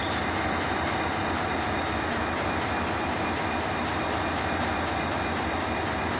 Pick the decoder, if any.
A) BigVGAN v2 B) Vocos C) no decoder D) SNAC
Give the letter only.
C